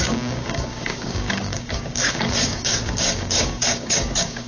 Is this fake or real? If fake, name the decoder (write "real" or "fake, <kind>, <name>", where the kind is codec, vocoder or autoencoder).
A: fake, codec, DAC